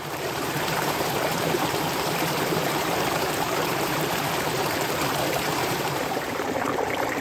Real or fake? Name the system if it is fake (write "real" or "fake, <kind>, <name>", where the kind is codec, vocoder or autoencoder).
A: fake, vocoder, BigVGAN v2